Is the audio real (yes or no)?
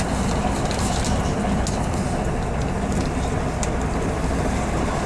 yes